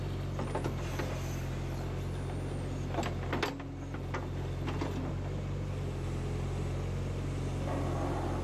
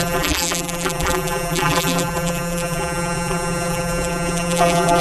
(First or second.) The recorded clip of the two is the first